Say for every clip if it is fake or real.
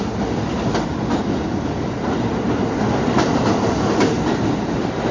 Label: real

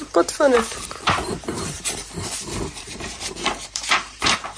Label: fake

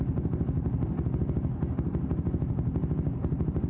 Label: fake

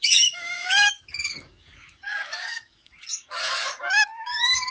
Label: fake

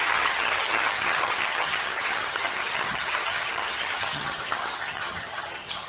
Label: fake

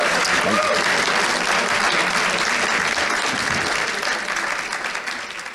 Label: real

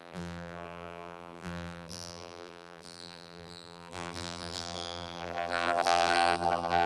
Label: fake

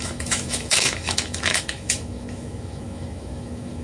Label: fake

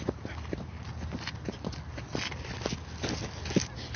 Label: real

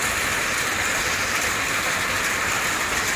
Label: real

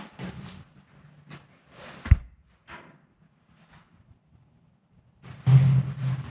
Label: real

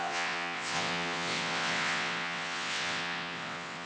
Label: fake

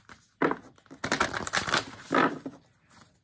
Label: real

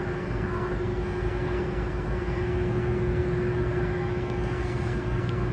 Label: fake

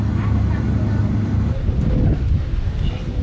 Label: real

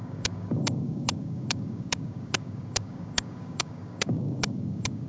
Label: fake